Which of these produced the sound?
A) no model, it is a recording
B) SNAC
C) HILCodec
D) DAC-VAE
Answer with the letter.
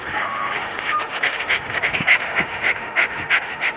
D